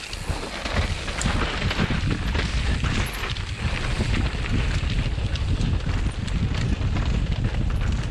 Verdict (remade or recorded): recorded